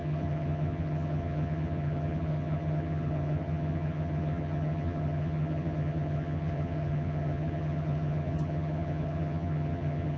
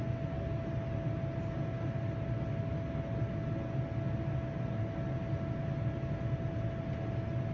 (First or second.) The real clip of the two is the second